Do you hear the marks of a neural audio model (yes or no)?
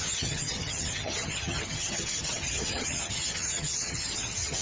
yes